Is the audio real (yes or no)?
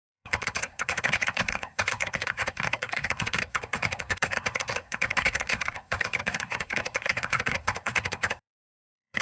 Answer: no